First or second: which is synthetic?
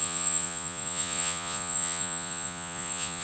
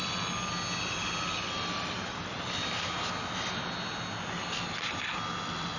first